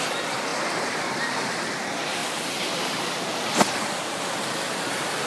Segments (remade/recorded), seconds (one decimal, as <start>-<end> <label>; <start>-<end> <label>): 0.0-0.5 recorded; 0.5-1.3 remade; 1.3-2.2 recorded; 2.2-3.3 remade; 3.3-5.3 recorded